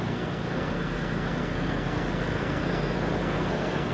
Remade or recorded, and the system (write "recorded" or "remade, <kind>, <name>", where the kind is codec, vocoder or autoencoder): remade, codec, SNAC